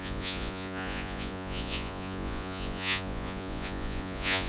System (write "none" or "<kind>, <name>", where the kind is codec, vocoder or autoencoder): vocoder, Vocos